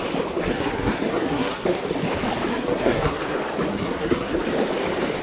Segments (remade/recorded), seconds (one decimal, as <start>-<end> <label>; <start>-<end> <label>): 0.0-0.4 recorded; 0.4-1.8 remade; 1.8-2.5 recorded; 2.5-3.2 remade; 3.2-3.7 recorded; 3.7-4.3 remade; 4.3-5.2 recorded

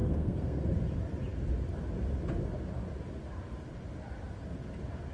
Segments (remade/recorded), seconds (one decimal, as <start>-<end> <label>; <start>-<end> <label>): 0.0-0.6 remade; 0.6-5.1 recorded

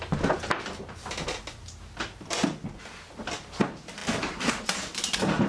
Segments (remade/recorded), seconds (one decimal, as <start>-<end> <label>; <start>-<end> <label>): 0.0-5.5 recorded

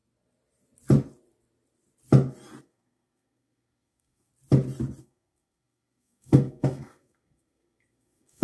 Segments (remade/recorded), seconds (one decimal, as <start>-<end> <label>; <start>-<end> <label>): 0.0-2.6 recorded; 2.6-4.3 remade; 4.3-5.0 recorded; 5.0-8.4 remade

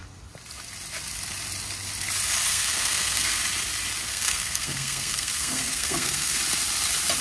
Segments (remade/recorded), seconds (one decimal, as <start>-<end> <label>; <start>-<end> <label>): 0.0-2.5 recorded; 2.5-3.4 remade; 3.4-4.1 recorded; 4.1-6.4 remade; 6.4-7.2 recorded

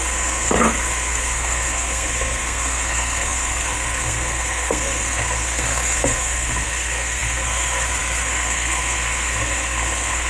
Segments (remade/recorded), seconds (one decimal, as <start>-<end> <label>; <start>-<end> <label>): 0.0-10.3 remade

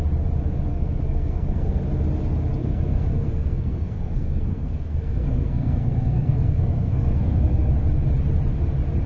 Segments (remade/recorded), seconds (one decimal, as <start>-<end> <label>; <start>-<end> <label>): 0.0-0.7 recorded; 0.7-1.8 remade; 1.8-2.6 recorded; 2.6-7.7 remade; 7.7-9.1 recorded